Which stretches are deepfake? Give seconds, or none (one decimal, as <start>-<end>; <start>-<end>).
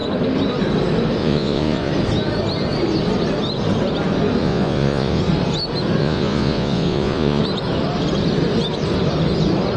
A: 1.2-1.9; 4.4-5.2; 6.0-7.4